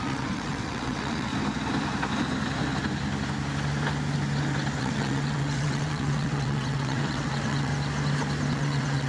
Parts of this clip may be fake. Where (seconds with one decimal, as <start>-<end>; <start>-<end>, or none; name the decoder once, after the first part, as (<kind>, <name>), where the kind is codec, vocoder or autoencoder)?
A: 0.0-1.3 (vocoder, WaveNeXt); 4.8-7.7; 8.5-9.1